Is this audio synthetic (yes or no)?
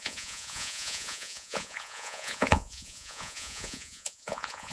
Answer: yes